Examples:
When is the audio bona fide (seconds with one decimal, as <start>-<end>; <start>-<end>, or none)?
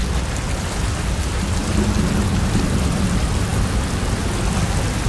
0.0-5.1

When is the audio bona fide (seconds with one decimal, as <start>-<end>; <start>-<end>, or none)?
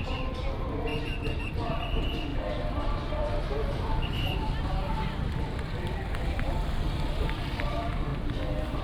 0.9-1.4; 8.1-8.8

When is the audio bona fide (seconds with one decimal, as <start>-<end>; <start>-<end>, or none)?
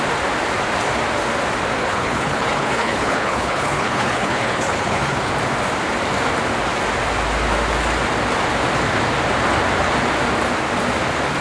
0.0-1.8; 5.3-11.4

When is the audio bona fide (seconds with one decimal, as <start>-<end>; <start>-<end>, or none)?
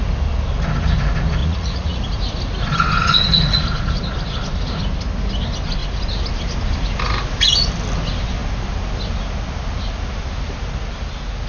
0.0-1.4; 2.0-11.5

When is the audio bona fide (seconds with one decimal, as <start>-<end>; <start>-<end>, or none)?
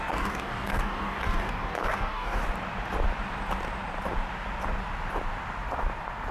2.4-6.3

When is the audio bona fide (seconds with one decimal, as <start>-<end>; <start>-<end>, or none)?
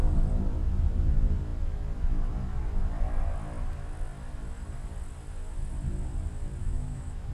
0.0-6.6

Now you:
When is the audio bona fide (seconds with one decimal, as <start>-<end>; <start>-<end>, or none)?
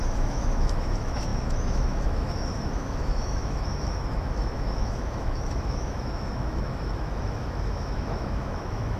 none